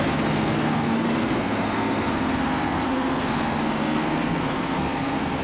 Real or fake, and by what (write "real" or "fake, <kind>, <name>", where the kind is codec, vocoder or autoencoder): fake, codec, SNAC